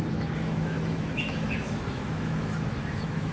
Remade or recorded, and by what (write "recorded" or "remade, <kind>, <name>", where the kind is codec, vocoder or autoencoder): remade, autoencoder, DAC-VAE